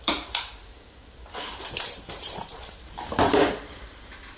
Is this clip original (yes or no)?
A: no